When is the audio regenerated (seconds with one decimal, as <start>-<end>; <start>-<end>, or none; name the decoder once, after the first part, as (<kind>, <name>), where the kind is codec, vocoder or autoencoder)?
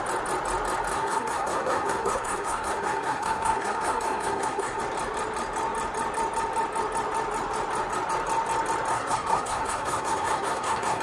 0.9-4.8 (codec, SNAC); 8.9-11.0